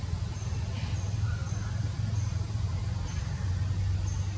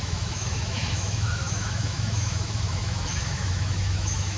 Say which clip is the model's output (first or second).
second